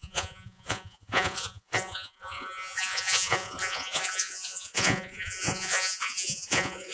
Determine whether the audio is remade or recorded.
remade